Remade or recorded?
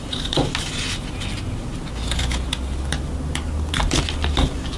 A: recorded